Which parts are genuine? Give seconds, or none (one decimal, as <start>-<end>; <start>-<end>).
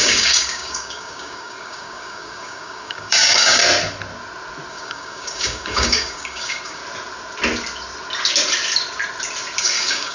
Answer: 3.6-4.7; 6.8-9.6